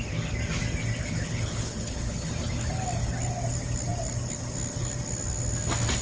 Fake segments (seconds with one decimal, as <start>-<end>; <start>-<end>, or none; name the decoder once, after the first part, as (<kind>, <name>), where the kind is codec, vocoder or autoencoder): 1.0-2.3 (codec, HILCodec)